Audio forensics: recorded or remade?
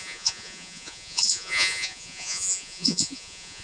remade